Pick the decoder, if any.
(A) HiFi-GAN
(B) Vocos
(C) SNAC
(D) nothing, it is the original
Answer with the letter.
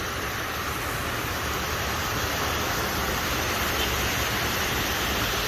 D